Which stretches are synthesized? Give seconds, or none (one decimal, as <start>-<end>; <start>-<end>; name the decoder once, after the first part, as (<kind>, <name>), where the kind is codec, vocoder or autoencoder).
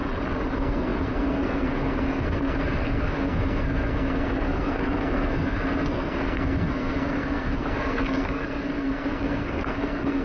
0.5-10.2 (codec, SNAC)